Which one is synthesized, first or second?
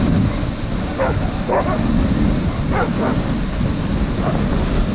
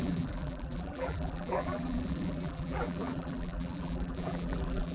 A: second